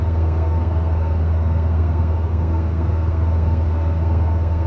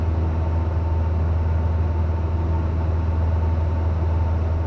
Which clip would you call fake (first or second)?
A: first